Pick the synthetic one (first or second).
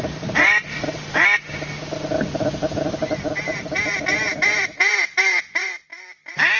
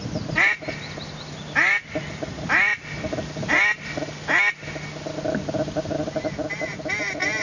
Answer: first